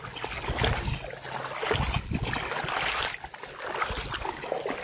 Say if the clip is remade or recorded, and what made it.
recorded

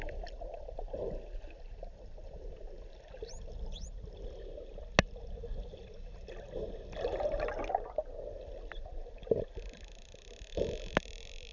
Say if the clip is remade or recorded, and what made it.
recorded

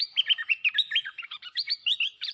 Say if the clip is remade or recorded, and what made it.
remade, vocoder, BigVGAN v2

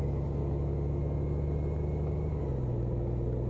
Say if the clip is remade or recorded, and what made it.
recorded